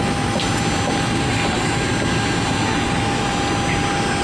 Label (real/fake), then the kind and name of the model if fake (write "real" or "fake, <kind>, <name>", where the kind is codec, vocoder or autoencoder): real